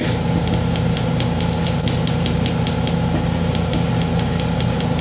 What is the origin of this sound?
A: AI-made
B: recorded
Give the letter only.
B